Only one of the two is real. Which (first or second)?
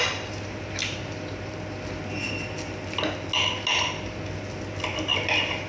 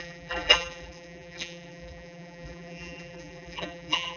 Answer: first